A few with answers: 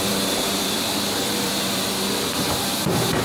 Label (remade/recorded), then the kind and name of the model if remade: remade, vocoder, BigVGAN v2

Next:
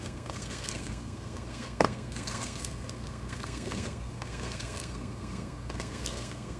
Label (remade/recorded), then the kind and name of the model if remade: remade, codec, SNAC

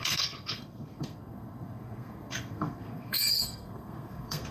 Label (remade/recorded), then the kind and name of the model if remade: remade, codec, SNAC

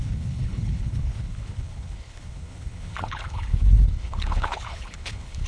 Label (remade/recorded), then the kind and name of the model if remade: remade, codec, HILCodec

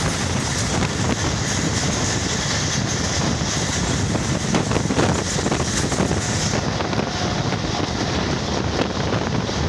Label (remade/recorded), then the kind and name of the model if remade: recorded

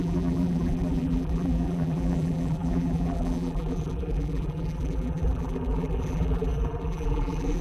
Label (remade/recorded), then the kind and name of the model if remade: remade, vocoder, BigVGAN v2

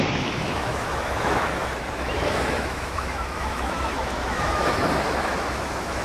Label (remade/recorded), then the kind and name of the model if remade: remade, autoencoder, DAC-VAE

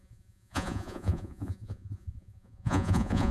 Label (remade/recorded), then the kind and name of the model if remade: remade, vocoder, Vocos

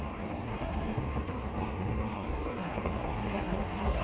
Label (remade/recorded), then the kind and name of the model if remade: remade, codec, SNAC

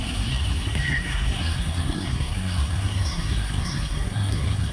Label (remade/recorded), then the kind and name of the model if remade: remade, codec, SNAC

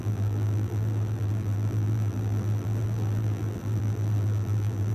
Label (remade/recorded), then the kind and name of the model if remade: remade, vocoder, BigVGAN v2